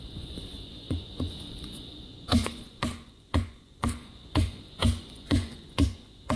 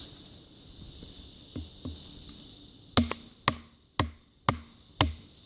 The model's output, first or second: first